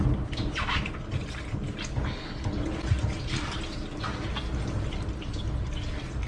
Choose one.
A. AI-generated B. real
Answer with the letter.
B